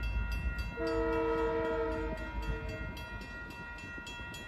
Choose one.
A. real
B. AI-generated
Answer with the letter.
A